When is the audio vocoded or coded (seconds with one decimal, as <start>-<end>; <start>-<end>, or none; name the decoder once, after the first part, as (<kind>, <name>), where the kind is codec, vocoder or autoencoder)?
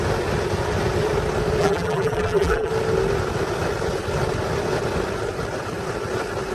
1.6-2.7 (vocoder, BigVGAN v2)